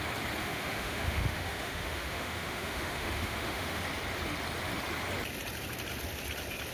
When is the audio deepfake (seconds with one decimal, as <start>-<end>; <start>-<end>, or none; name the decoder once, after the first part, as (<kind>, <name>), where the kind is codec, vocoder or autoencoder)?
0.4-3.8 (autoencoder, DAC-VAE)